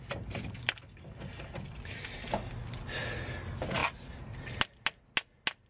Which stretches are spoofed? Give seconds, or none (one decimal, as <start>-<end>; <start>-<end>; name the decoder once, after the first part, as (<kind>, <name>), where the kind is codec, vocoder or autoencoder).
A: none